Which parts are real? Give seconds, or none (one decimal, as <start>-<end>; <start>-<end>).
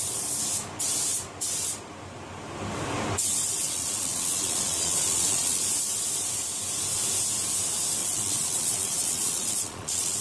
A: 0.0-3.6; 5.6-8.0